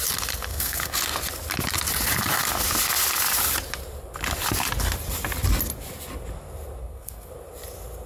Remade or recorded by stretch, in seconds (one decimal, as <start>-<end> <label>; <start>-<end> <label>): 0.0-0.5 recorded; 0.5-1.0 remade; 1.0-6.8 recorded; 6.8-7.3 remade; 7.3-8.1 recorded